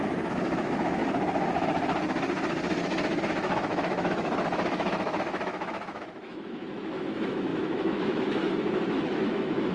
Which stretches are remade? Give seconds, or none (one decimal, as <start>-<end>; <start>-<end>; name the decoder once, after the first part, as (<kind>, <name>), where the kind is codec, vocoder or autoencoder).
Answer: 0.0-1.0 (autoencoder, DAC-VAE); 3.2-9.7